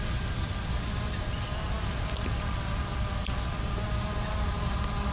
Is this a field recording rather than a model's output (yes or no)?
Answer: yes